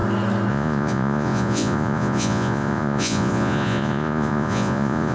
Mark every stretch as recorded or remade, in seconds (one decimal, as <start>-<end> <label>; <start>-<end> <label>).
0.0-0.5 recorded; 0.5-5.1 remade